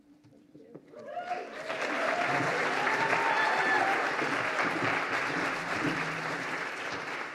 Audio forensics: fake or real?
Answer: fake